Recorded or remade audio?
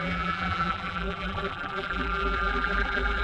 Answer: remade